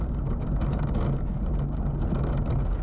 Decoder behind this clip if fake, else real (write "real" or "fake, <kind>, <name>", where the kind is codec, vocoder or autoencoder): real